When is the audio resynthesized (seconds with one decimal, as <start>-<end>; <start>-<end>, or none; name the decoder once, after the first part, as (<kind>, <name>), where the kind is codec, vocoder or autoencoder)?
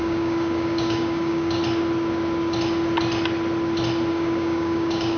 0.0-1.6 (codec, DAC); 4.1-5.2